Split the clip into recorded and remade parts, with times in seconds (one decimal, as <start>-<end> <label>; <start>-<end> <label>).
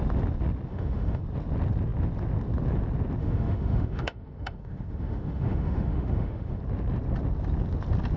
0.0-0.7 recorded; 0.7-1.2 remade; 1.2-3.2 recorded; 3.2-6.6 remade; 6.6-8.2 recorded